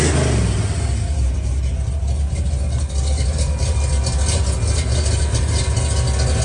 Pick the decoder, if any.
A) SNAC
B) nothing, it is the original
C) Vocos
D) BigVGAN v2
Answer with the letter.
B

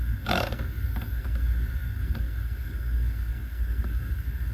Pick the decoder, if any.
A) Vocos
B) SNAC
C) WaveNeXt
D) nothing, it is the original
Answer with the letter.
B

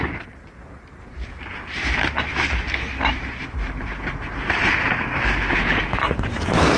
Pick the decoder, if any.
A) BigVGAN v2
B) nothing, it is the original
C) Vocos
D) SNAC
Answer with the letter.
A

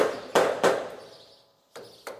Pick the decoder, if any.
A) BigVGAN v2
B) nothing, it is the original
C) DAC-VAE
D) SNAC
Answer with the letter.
B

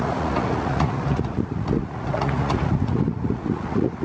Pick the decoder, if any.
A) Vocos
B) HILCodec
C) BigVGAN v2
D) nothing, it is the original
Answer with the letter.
A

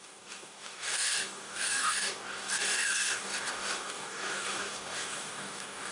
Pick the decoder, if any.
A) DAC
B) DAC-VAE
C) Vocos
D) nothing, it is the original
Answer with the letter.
A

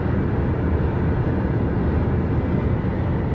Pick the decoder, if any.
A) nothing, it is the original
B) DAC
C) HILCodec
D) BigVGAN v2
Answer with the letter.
A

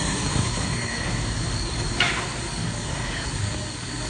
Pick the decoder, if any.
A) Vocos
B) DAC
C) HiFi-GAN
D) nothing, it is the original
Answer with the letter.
B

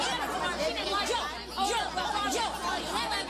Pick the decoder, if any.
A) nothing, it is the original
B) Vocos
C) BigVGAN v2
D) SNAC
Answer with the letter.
A